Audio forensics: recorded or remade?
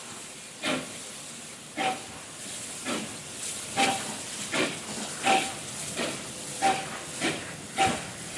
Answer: recorded